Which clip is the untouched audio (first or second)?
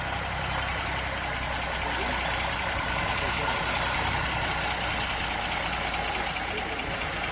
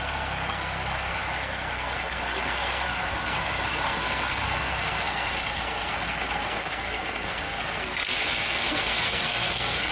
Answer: first